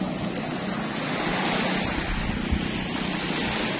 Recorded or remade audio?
recorded